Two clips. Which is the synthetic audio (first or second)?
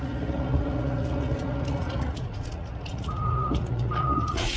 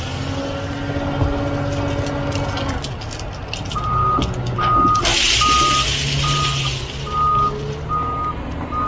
first